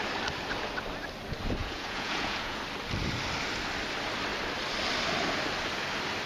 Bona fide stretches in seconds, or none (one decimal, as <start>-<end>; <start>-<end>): 0.0-1.6; 2.6-6.3